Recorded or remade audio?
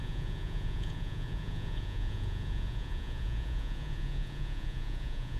remade